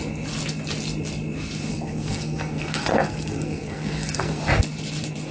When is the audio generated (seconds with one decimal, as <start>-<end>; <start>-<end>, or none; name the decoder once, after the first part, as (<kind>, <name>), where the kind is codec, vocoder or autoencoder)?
1.7-4.4 (codec, SNAC)